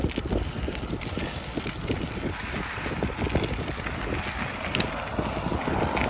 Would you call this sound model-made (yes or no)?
no